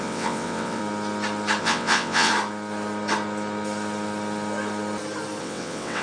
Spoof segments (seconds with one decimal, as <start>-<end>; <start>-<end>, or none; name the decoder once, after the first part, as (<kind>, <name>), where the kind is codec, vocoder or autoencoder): 0.0-0.8 (vocoder, WaveNeXt); 1.6-2.3; 5.4-6.0